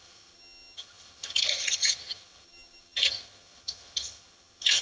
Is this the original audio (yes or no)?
no